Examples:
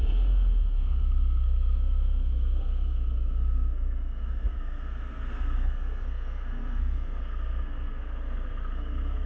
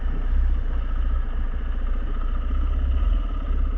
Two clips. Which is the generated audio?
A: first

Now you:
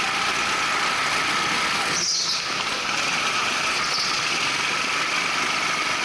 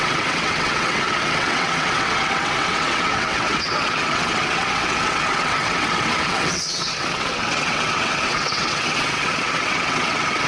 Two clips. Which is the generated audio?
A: second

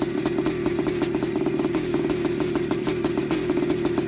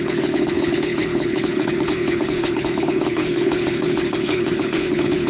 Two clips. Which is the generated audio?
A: second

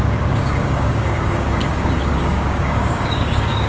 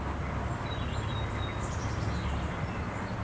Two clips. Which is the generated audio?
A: first